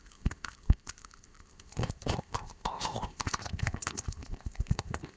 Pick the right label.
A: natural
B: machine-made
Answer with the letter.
B